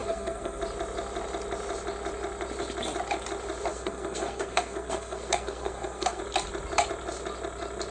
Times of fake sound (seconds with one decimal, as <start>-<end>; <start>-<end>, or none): 0.0-0.6; 3.7-6.2

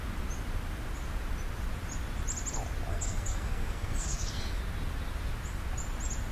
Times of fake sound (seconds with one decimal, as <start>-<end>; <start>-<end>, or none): 2.9-4.6

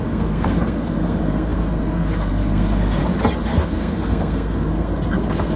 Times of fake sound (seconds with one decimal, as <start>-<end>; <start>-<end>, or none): 0.0-3.0; 3.5-5.6

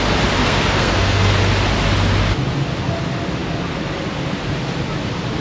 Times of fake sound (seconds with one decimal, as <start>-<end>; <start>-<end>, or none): 0.4-1.3